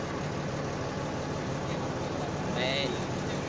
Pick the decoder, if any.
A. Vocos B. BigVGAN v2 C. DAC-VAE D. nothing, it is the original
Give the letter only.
D